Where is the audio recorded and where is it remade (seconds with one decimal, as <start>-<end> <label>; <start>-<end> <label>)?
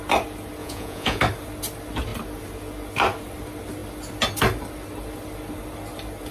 0.0-0.6 recorded; 0.6-1.2 remade; 1.2-6.3 recorded